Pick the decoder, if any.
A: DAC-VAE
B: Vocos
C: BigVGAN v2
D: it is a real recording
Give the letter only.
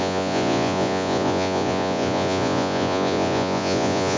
B